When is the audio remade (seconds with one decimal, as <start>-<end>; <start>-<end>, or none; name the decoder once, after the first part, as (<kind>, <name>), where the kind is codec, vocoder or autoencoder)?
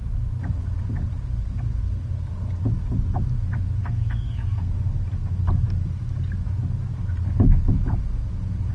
3.8-4.7 (codec, SNAC)